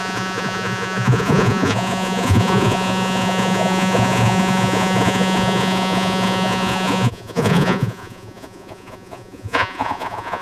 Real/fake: fake